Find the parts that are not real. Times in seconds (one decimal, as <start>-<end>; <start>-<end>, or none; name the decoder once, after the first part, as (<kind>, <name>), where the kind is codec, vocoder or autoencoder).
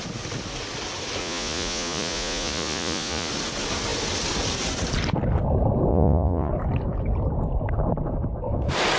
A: 1.2-3.3 (vocoder, Vocos); 5.9-6.5